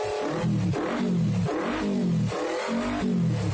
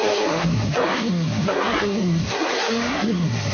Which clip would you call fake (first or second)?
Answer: second